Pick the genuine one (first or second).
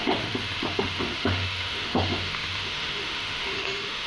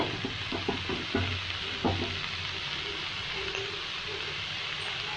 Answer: second